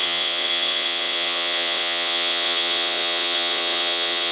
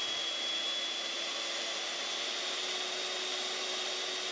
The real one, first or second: second